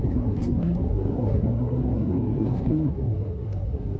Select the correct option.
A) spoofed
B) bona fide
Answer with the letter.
A